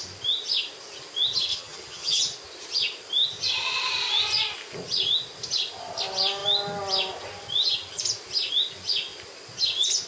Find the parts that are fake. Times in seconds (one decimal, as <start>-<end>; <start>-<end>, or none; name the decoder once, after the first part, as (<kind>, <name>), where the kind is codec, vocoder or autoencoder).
1.5-2.2 (vocoder, HiFi-GAN)